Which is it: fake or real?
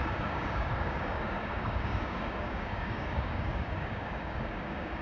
fake